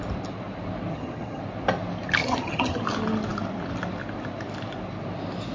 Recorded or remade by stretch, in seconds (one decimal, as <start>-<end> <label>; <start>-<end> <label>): 0.0-0.9 recorded; 0.9-1.4 remade; 1.4-2.2 recorded; 2.2-2.8 remade; 2.8-5.5 recorded

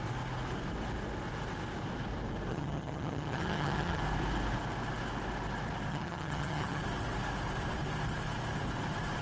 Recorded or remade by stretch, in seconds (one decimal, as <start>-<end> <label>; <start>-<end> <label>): 0.0-2.5 recorded; 2.5-4.0 remade; 4.0-5.9 recorded; 5.9-6.8 remade; 6.8-9.2 recorded

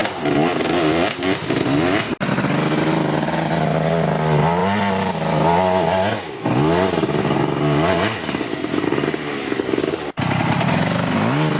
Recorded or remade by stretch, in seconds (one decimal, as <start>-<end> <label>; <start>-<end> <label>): 0.0-11.6 recorded

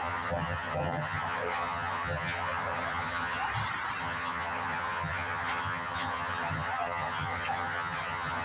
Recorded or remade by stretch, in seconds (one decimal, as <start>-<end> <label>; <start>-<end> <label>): 0.0-3.4 remade; 3.4-4.0 recorded; 4.0-8.4 remade

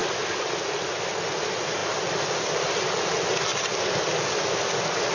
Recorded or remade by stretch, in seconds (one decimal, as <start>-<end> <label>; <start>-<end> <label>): 0.0-5.1 recorded